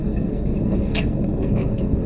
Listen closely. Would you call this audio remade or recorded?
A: remade